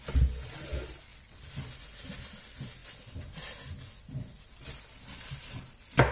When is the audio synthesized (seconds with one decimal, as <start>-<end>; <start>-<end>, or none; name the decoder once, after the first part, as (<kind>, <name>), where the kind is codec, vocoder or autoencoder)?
none